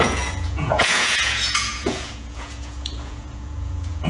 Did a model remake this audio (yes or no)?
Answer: yes